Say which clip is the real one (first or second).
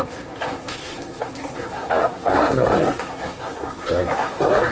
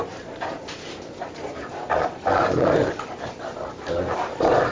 second